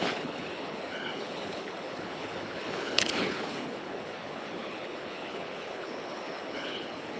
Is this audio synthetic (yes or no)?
yes